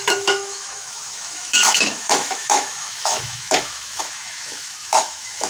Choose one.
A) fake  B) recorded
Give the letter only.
A